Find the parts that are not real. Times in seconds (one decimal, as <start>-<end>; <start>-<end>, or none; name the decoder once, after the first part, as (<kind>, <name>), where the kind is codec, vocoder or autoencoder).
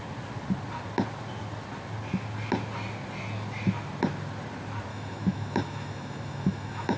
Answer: 4.9-7.0 (autoencoder, DAC-VAE)